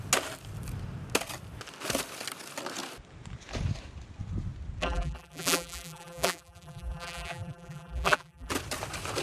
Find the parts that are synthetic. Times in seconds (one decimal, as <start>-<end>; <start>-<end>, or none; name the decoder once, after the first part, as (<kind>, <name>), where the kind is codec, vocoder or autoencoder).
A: 4.8-8.5 (vocoder, BigVGAN v2)